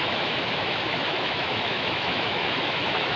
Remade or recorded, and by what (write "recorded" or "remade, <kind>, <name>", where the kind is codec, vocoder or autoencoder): remade, autoencoder, DAC-VAE